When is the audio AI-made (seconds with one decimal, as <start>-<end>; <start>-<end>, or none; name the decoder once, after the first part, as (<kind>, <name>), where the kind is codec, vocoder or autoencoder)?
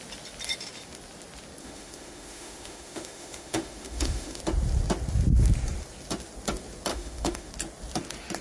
1.6-4.4 (autoencoder, DAC-VAE); 6.9-7.5